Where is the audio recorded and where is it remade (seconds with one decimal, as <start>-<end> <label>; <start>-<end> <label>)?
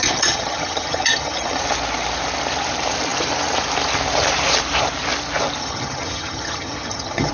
0.0-1.6 remade; 1.6-5.6 recorded; 5.6-7.3 remade